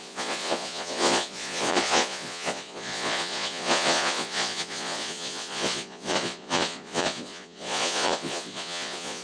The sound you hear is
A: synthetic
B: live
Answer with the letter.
A